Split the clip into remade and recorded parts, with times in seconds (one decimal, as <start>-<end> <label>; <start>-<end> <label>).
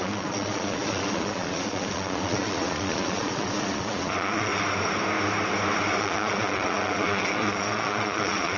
0.0-4.5 remade; 4.5-6.0 recorded; 6.0-8.6 remade